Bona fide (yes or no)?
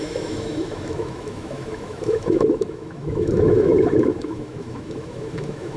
no